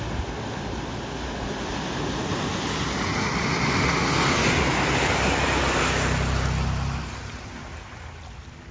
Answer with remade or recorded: recorded